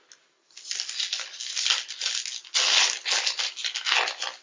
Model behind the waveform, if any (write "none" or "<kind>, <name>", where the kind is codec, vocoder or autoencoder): none